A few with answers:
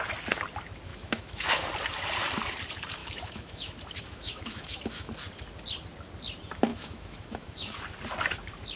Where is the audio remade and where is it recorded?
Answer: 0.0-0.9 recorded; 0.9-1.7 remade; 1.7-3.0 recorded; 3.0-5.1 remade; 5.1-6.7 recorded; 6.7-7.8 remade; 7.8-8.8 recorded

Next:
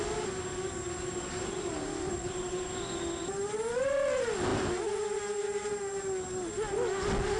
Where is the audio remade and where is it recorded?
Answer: 0.0-7.4 recorded

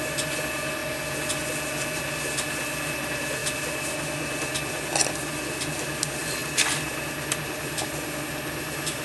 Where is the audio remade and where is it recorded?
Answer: 0.0-9.0 recorded

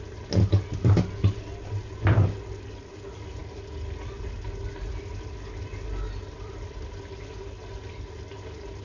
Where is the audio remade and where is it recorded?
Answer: 0.0-8.8 recorded

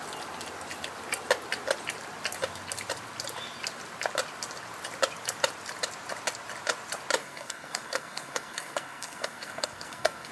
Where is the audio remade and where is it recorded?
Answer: 0.0-7.2 recorded; 7.2-10.3 remade

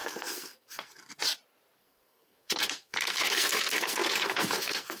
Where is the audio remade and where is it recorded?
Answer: 0.0-1.2 remade; 1.2-1.8 recorded; 1.8-5.0 remade

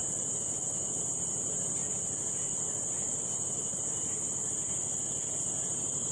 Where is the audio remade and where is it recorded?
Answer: 0.0-1.0 recorded; 1.0-1.8 remade; 1.8-5.4 recorded; 5.4-6.1 remade